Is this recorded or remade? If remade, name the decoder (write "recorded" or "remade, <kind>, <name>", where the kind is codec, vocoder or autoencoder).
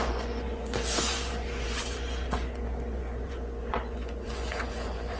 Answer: remade, vocoder, Vocos